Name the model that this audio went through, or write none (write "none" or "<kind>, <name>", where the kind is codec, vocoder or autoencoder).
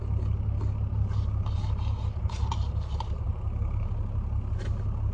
none